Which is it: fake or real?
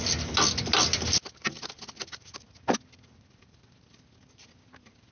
real